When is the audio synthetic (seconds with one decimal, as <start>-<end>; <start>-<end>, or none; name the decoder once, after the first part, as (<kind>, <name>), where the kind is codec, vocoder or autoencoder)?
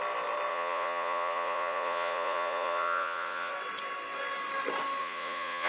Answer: 0.5-3.5 (vocoder, Vocos); 5.0-5.7